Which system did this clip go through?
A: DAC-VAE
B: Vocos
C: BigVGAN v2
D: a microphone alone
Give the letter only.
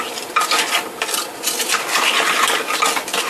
D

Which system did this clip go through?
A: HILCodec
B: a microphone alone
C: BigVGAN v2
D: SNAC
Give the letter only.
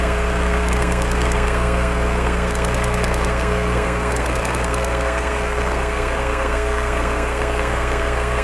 D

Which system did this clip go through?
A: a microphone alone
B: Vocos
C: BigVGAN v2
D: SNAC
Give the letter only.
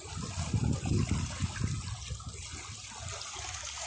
A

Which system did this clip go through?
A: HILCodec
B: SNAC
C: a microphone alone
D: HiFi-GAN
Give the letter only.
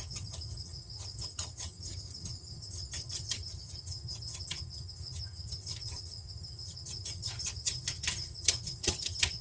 D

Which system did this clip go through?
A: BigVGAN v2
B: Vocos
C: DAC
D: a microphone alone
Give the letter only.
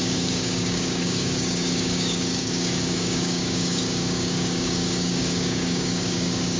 C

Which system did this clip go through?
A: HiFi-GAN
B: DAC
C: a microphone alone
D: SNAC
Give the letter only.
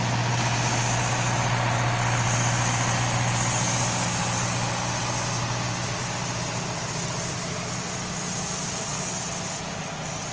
C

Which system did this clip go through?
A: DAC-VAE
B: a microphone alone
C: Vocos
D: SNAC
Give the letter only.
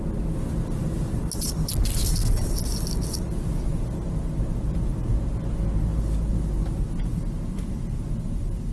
B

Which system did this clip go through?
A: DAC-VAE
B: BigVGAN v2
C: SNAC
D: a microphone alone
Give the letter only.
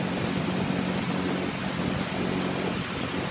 D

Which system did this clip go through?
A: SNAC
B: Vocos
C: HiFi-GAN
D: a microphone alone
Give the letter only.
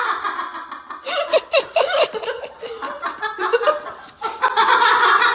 D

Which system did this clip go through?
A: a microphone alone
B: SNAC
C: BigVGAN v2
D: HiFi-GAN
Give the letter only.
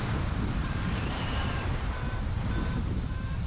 C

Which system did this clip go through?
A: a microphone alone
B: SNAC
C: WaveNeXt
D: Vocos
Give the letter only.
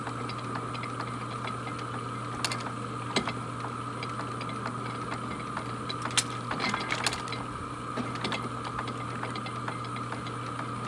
A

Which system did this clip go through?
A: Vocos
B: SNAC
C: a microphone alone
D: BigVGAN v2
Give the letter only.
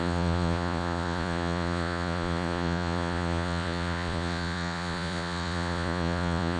A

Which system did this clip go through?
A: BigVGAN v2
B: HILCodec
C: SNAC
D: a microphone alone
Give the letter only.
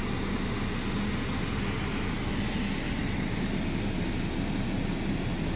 D